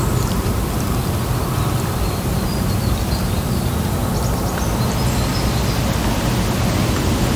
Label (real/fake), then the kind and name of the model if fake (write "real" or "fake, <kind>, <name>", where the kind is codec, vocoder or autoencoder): real